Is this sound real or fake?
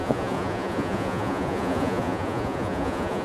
fake